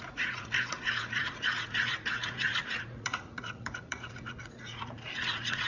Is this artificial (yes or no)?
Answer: yes